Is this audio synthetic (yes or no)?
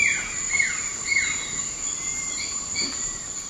yes